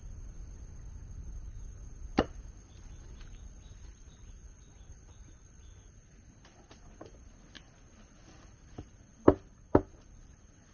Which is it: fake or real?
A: real